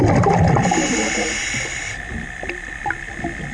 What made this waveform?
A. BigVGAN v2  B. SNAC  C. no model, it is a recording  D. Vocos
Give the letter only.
C